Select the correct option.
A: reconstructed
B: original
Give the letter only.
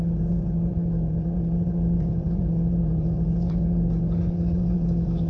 A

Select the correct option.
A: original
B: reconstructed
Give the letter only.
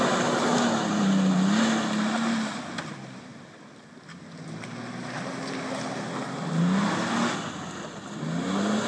A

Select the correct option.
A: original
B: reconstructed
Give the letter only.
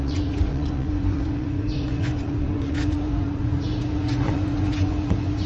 B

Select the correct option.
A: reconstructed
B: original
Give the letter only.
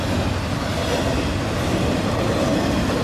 B